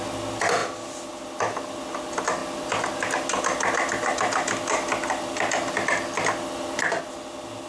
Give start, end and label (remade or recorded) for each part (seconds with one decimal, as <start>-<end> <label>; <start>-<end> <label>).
0.0-7.7 recorded